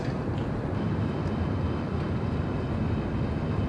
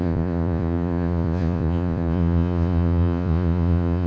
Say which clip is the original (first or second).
first